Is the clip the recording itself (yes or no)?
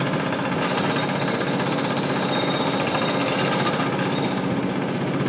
yes